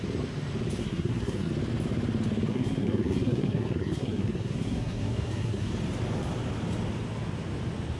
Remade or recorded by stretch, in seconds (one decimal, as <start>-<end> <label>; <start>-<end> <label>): 0.0-0.8 recorded; 0.8-1.5 remade; 1.5-2.5 recorded; 2.5-5.7 remade; 5.7-8.0 recorded